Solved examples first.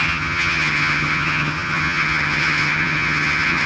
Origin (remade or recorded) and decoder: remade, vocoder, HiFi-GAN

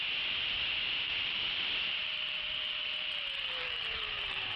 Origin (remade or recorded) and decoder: remade, vocoder, BigVGAN v2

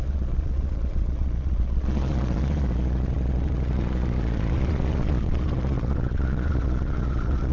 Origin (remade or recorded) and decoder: remade, vocoder, Vocos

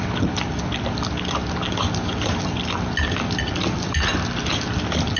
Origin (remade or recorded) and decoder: recorded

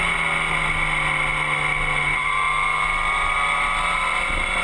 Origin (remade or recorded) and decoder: recorded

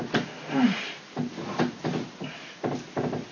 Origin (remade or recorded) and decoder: recorded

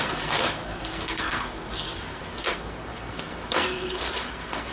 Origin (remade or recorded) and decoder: remade, codec, SNAC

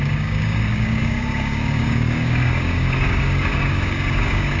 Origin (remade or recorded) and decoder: remade, codec, DAC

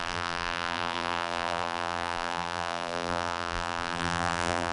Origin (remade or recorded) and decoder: remade, vocoder, BigVGAN v2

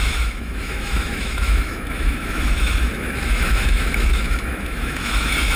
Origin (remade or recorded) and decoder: remade, autoencoder, DAC-VAE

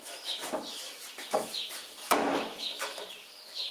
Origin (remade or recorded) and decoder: remade, autoencoder, DAC-VAE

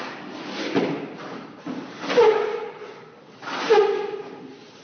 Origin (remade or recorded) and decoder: recorded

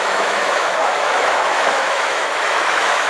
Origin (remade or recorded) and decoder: remade, autoencoder, DAC-VAE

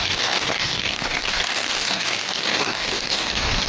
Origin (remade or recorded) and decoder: remade, codec, DAC